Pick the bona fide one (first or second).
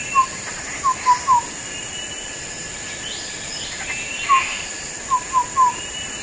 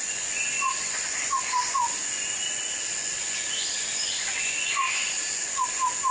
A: first